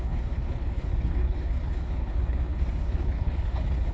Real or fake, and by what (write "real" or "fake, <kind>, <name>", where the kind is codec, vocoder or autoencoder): fake, codec, HILCodec